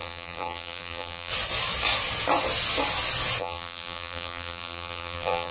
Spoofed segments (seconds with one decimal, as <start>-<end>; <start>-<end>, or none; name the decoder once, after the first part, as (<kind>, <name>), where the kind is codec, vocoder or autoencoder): 0.0-1.3 (vocoder, BigVGAN v2); 3.4-5.5